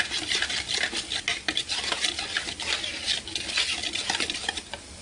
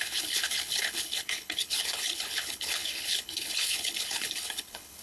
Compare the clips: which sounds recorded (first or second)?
first